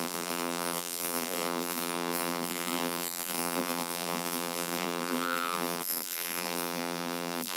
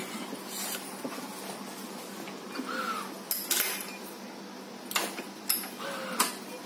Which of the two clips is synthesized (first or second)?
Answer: first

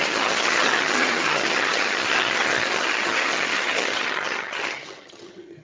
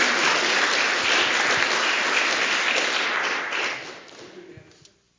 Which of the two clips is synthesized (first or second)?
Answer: first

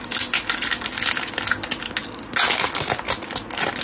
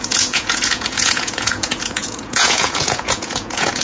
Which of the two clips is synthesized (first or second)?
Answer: second